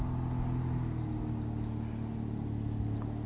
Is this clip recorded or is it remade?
recorded